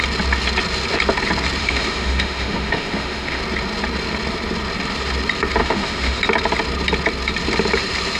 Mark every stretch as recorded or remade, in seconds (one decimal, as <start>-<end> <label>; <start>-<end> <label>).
0.0-1.6 recorded; 1.6-3.4 remade; 3.4-5.6 recorded; 5.6-6.2 remade; 6.2-8.2 recorded